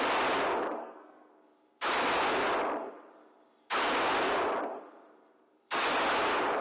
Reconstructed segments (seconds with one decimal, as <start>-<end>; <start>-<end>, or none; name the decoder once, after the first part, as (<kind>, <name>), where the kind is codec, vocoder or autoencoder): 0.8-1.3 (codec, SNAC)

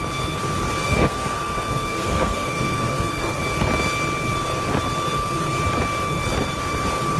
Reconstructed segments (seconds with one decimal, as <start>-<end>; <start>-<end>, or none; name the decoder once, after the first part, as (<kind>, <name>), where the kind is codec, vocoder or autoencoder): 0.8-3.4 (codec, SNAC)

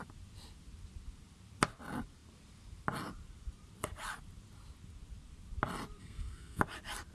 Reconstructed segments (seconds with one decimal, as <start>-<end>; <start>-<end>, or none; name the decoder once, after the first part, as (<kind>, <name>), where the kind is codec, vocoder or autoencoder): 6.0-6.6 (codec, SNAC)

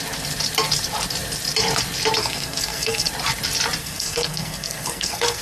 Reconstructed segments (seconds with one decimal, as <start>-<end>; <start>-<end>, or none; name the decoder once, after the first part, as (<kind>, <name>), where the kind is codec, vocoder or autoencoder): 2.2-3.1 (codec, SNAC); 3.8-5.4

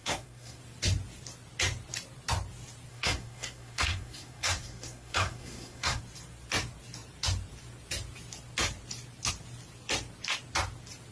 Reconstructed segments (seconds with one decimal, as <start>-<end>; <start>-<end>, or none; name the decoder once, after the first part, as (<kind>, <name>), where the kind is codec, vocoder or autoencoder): 0.0-0.6 (codec, SNAC); 2.9-6.0

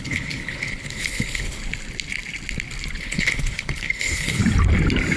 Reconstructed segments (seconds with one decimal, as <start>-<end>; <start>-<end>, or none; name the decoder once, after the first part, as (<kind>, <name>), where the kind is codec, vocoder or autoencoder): 0.0-1.6 (codec, HILCodec); 3.0-4.4

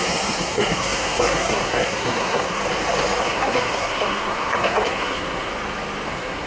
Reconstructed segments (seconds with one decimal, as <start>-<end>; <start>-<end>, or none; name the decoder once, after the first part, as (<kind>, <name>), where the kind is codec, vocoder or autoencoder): 0.0-2.6 (codec, SNAC); 3.2-5.5; 6.1-6.5